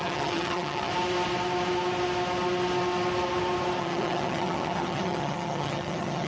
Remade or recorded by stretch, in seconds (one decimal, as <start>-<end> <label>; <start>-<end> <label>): 0.0-0.9 remade; 0.9-3.8 recorded; 3.8-6.3 remade